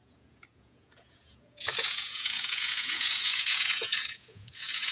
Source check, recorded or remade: remade